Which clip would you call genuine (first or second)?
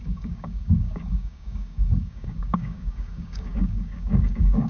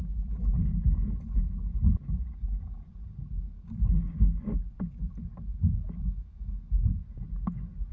second